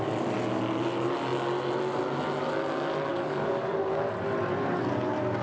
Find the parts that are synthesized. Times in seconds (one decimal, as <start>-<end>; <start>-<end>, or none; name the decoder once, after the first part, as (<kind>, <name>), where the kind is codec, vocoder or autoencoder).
3.1-4.0 (codec, DAC)